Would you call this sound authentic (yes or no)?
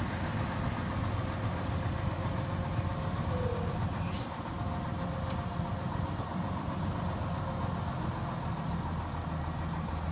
yes